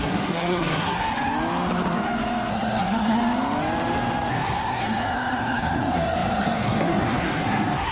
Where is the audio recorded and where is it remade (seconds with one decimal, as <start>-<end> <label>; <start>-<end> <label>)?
0.0-1.1 remade; 1.1-2.5 recorded; 2.5-3.2 remade; 3.2-4.3 recorded; 4.3-7.9 remade